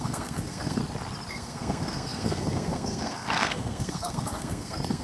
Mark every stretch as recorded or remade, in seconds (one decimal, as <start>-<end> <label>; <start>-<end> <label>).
0.0-0.8 remade; 0.8-1.3 recorded; 1.3-5.0 remade